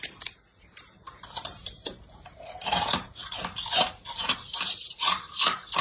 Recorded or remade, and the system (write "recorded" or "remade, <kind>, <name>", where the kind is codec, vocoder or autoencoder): remade, vocoder, BigVGAN v2